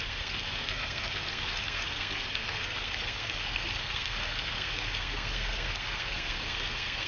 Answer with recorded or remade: remade